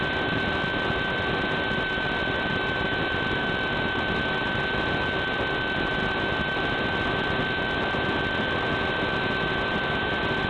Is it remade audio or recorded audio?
recorded